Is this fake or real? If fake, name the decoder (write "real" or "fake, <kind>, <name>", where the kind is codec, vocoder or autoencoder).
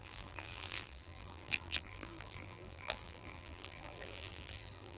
fake, vocoder, BigVGAN v2